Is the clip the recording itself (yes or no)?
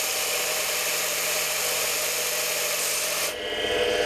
yes